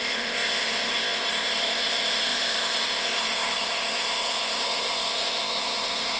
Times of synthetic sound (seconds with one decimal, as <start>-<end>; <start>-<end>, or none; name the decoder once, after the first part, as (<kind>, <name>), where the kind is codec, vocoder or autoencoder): 0.0-6.2 (codec, ZipCodec)